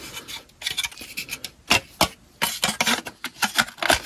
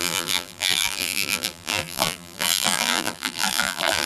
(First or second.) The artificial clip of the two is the second